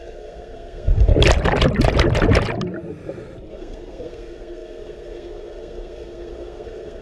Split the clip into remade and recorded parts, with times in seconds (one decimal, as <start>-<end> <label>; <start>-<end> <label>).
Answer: 0.0-1.1 remade; 1.1-3.5 recorded; 3.5-7.0 remade